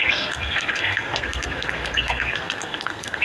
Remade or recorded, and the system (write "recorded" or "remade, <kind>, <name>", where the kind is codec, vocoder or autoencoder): remade, codec, SNAC